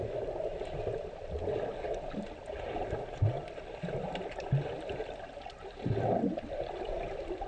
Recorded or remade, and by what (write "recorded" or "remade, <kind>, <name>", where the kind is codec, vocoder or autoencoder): recorded